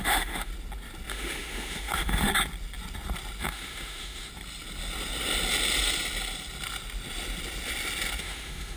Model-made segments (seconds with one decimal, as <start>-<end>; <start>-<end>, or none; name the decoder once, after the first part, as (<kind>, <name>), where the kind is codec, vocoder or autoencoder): 0.0-0.5 (autoencoder, DAC-VAE); 1.1-2.3; 3.4-4.3; 8.2-8.8